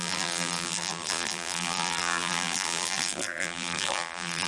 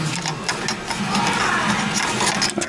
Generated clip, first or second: first